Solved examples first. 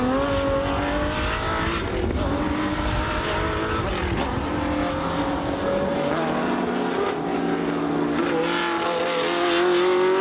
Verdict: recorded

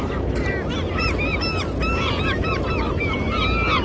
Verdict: recorded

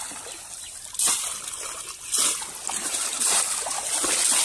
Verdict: recorded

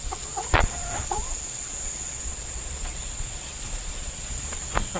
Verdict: remade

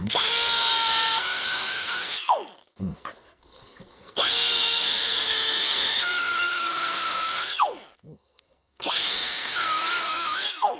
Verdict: remade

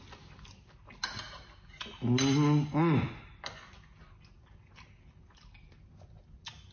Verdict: recorded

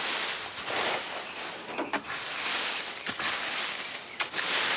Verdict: recorded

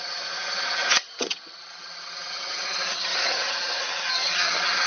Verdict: remade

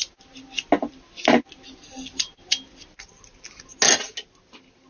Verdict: recorded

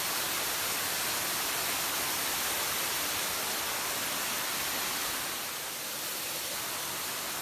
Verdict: recorded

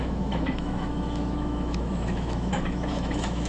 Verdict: remade